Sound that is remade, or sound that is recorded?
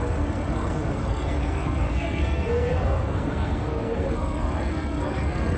remade